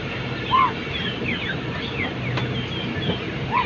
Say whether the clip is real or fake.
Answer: real